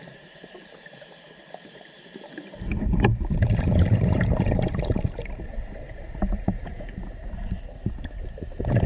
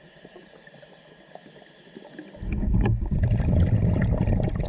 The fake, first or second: first